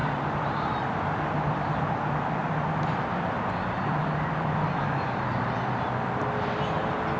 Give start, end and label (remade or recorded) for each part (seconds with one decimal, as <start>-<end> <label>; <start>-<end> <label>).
0.0-7.2 remade